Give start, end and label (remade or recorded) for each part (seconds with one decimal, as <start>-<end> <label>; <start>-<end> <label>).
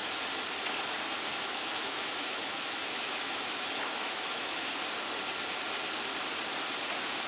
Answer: 0.0-1.3 recorded; 1.3-4.6 remade; 4.6-7.3 recorded